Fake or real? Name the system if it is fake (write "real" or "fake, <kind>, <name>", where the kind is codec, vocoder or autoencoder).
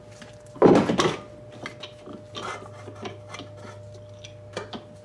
real